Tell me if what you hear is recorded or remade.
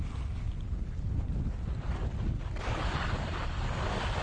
recorded